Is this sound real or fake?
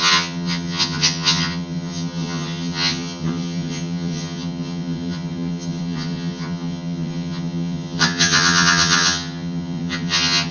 fake